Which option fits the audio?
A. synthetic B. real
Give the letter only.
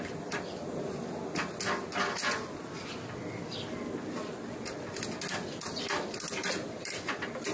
B